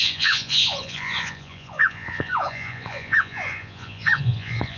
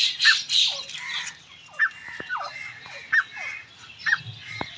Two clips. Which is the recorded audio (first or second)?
second